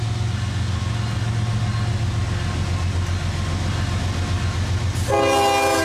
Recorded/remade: recorded